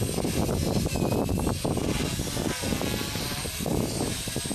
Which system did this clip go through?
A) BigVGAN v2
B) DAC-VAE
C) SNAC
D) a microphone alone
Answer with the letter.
D